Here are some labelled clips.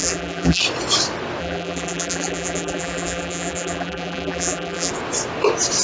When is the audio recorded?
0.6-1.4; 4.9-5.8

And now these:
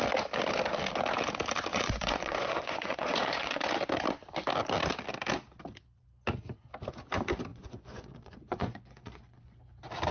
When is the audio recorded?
0.0-1.7; 3.6-7.5; 9.6-10.1

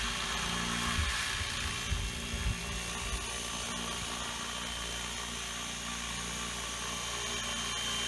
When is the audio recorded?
0.0-8.1

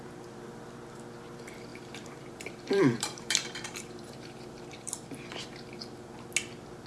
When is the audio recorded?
0.0-1.7; 5.8-6.9

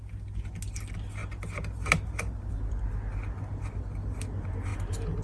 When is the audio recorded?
0.0-5.2

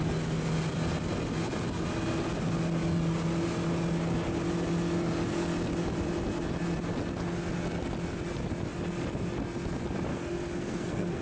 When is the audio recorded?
0.0-10.1

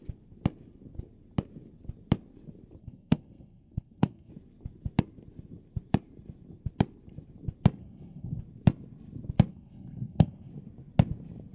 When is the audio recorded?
0.0-2.8; 4.3-7.8; 8.4-9.5; 10.5-11.5